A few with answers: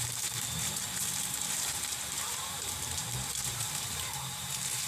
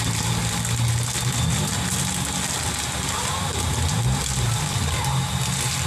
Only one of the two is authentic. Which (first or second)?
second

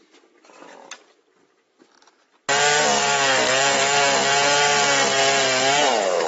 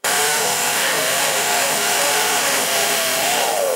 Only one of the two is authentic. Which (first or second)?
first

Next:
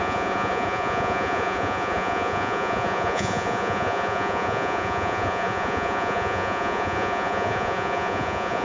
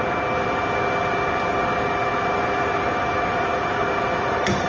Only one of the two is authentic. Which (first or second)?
second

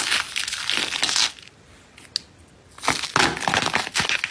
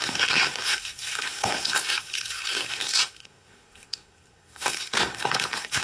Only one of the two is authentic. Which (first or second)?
first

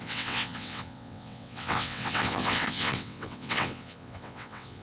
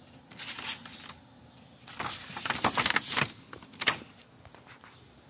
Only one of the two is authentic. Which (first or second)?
second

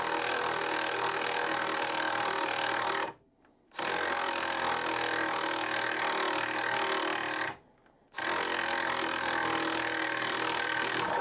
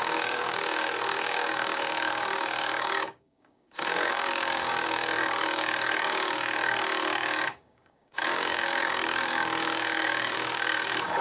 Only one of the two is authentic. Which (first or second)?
first